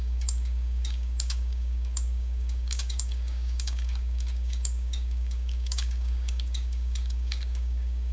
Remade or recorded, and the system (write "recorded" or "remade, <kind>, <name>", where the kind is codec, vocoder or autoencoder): remade, codec, DAC